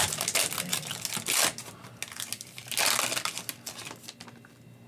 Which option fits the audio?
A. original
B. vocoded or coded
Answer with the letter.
A